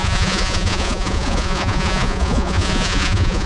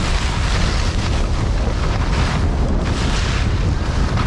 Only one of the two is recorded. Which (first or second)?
second